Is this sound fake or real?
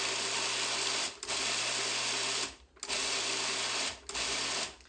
real